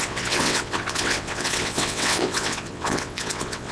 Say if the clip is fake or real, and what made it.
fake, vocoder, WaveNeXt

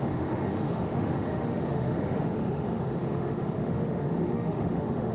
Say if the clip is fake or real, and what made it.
fake, autoencoder, DAC-VAE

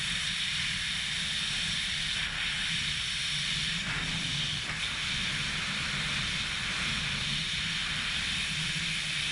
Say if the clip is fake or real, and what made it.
real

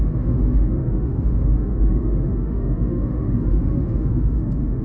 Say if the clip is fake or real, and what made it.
fake, autoencoder, DAC-VAE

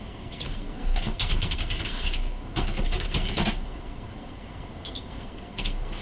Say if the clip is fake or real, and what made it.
fake, codec, SNAC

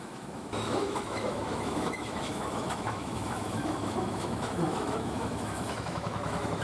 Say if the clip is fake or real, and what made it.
fake, autoencoder, DAC-VAE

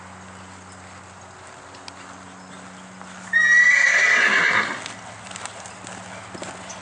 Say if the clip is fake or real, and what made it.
real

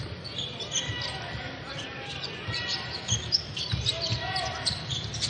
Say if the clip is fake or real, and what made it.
real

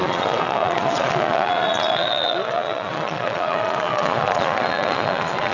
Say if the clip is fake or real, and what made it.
fake, vocoder, Vocos